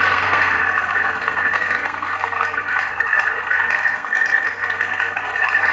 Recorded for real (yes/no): no